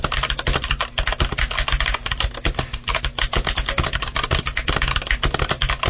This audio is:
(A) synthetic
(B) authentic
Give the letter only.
B